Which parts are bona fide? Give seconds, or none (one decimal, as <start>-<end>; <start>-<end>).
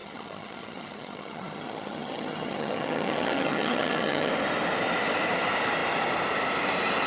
4.3-7.1